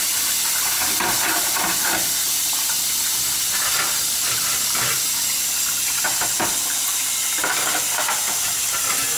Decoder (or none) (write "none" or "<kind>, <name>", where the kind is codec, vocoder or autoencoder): vocoder, BigVGAN v2